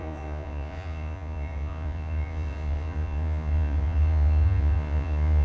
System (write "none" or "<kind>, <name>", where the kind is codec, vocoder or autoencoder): vocoder, Vocos